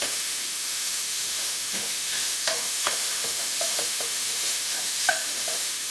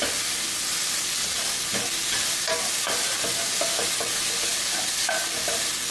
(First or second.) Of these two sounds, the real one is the second